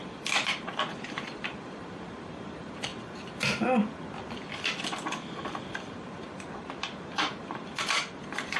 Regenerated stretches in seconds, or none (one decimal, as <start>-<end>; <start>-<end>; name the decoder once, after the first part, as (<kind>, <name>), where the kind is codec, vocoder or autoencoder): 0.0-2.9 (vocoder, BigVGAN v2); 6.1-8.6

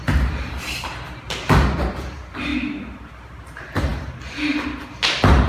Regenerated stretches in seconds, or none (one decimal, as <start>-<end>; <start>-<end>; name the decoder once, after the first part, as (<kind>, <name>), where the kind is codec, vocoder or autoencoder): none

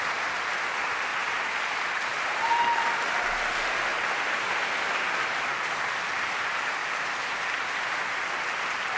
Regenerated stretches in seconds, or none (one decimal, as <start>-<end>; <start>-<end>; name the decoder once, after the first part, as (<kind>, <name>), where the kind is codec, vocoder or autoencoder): 1.1-1.7 (vocoder, BigVGAN v2); 2.1-2.6; 3.9-5.1; 6.8-7.3

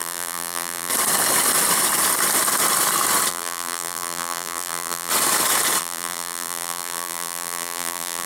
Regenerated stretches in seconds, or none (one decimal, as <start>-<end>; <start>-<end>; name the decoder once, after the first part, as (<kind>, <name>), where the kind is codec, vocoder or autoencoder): 0.0-0.9 (vocoder, BigVGAN v2); 3.3-5.1; 5.8-8.3

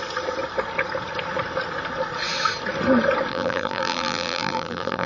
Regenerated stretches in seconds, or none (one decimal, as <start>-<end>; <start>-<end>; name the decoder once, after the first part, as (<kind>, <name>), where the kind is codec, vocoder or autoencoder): 3.3-5.1 (vocoder, BigVGAN v2)